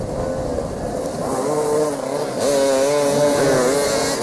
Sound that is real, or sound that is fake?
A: real